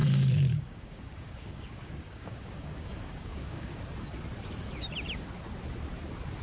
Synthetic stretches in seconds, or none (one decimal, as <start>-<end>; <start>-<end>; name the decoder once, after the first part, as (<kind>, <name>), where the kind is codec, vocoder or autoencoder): 0.0-3.8 (codec, DAC)